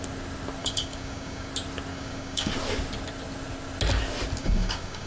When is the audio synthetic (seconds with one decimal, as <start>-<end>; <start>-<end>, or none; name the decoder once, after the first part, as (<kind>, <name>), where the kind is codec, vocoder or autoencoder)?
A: 0.6-1.5 (codec, DAC); 1.9-2.5; 4.4-5.1